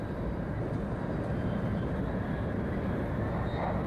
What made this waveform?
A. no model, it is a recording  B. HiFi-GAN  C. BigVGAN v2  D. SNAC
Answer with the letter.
A